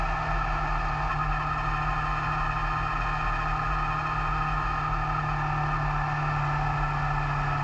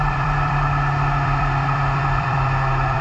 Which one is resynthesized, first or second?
second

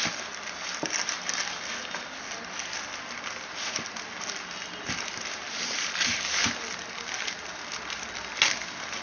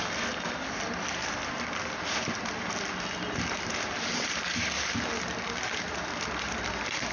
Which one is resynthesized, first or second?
second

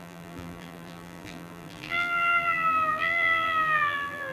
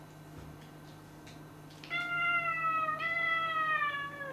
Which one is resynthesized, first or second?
first